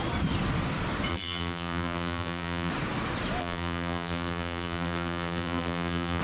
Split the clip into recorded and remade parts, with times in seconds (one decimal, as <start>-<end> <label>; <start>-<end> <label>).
0.0-1.1 recorded; 1.1-2.7 remade; 2.7-3.4 recorded; 3.4-6.2 remade